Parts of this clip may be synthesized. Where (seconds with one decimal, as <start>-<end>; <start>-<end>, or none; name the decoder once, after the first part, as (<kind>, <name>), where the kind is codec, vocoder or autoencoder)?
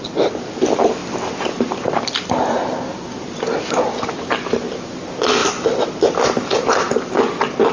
none